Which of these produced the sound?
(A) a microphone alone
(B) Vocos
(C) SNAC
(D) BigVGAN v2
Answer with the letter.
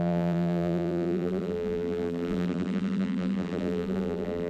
D